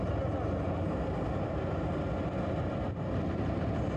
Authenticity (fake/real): real